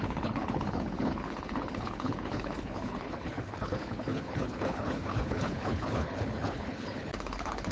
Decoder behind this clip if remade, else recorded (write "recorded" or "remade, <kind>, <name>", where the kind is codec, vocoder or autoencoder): remade, codec, HILCodec